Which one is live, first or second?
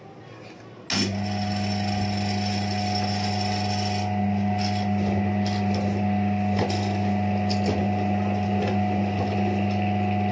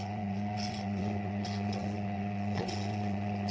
first